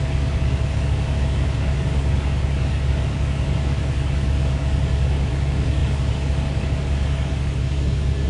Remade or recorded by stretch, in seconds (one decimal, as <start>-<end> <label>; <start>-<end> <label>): 0.0-8.3 remade